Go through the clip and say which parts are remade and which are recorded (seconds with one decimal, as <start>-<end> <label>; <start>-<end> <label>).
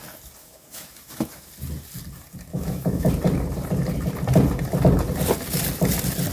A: 0.0-0.4 recorded; 0.4-1.5 remade; 1.5-2.5 recorded; 2.5-3.1 remade; 3.1-6.3 recorded